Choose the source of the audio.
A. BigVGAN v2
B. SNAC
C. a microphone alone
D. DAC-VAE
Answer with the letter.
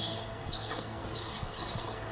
B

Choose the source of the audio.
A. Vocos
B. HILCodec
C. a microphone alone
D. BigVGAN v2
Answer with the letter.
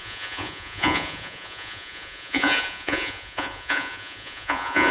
A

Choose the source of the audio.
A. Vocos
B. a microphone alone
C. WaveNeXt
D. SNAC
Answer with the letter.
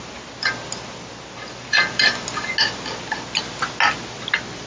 B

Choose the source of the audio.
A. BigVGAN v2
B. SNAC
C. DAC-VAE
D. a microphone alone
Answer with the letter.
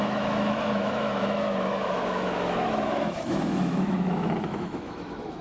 C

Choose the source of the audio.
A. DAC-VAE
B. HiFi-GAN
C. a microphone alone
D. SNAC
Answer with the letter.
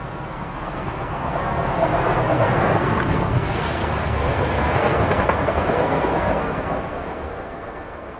D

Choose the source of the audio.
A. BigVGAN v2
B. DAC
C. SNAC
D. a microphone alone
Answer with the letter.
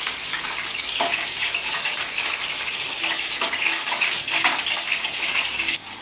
B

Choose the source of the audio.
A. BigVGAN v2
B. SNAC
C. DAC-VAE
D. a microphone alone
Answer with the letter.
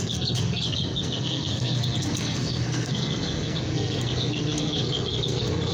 B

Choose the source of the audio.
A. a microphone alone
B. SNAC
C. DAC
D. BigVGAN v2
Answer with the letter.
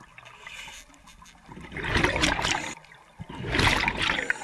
A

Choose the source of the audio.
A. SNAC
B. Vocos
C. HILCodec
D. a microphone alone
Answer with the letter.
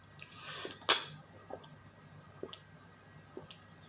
D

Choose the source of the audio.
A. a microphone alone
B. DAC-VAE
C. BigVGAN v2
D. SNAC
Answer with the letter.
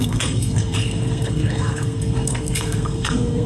D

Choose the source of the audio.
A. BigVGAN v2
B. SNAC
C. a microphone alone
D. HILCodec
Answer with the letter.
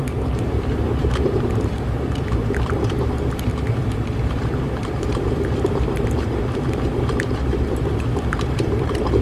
A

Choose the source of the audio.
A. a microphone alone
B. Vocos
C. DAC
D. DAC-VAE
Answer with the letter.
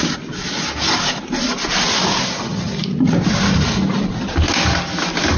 A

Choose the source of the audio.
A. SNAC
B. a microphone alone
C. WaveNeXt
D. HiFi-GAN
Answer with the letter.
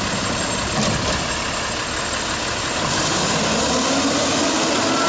B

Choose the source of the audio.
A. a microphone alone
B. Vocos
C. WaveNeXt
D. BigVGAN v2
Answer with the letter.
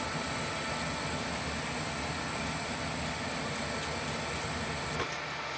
A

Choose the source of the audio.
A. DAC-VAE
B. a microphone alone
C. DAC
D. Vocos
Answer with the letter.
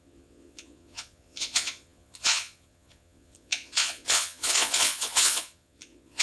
D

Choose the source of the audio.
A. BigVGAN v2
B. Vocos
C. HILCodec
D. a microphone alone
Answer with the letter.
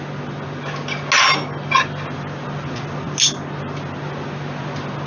D